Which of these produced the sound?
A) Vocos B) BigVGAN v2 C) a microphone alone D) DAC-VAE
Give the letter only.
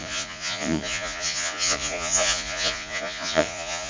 A